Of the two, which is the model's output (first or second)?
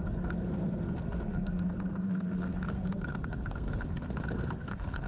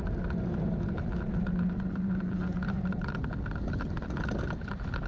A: first